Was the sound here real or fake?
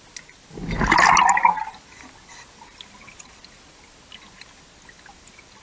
real